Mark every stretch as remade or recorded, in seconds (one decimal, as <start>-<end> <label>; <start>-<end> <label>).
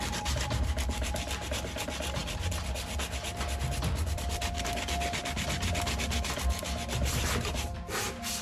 0.0-8.4 recorded